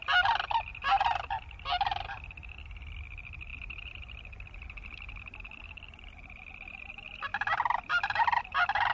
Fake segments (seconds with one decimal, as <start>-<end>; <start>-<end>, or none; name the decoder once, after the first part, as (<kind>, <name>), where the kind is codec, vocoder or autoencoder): none